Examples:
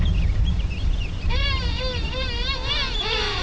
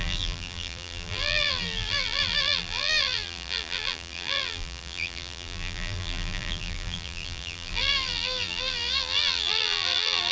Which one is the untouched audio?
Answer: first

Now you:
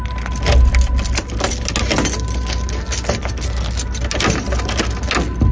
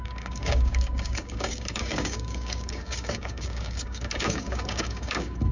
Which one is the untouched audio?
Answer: first